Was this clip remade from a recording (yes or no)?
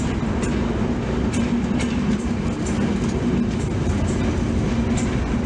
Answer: no